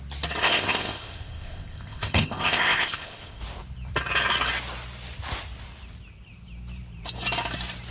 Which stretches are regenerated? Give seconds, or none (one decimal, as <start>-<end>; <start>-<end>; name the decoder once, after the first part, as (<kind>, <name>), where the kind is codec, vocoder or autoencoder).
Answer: 0.4-3.4 (codec, ZipCodec)